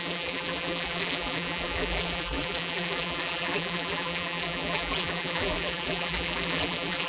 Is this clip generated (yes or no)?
yes